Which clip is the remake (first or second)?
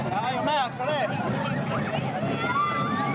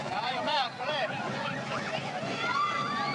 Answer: second